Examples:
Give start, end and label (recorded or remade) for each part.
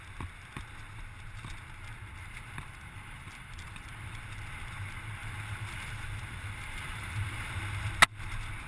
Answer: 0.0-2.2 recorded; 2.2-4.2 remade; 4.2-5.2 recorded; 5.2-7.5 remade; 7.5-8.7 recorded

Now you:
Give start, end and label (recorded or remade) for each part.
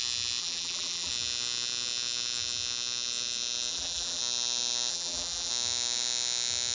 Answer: 0.0-0.4 recorded; 0.4-1.1 remade; 1.1-3.7 recorded; 3.7-4.2 remade; 4.2-4.9 recorded; 4.9-5.5 remade; 5.5-6.7 recorded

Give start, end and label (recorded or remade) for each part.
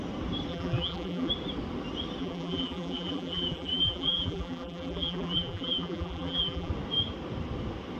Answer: 0.0-0.5 recorded; 0.5-1.3 remade; 1.3-2.2 recorded; 2.2-6.7 remade; 6.7-8.0 recorded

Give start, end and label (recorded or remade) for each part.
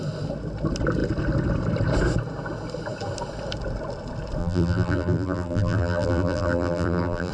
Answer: 0.0-4.4 recorded; 4.4-7.3 remade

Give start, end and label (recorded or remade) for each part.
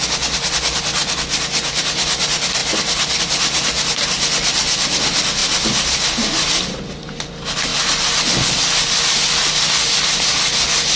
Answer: 0.0-11.0 recorded